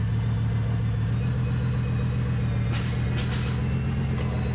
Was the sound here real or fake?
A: real